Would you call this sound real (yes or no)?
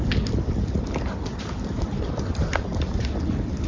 yes